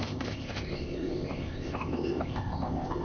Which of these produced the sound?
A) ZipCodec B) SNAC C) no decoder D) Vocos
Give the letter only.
A